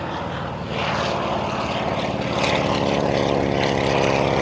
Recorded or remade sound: recorded